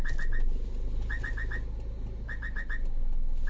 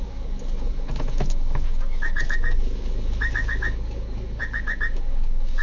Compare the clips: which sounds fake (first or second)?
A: second